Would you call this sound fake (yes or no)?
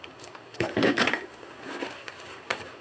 yes